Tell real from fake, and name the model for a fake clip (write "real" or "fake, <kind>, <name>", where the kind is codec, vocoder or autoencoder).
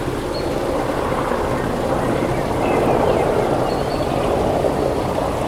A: real